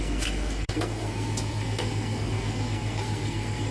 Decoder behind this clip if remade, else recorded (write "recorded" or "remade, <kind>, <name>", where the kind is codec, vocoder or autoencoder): remade, codec, SNAC